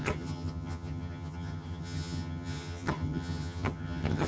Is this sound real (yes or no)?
no